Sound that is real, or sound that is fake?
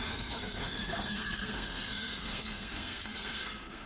fake